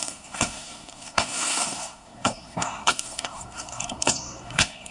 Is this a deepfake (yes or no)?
yes